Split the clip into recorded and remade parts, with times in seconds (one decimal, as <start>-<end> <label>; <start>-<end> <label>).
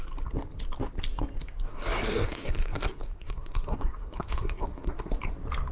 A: 0.0-1.7 recorded; 1.7-5.1 remade; 5.1-5.7 recorded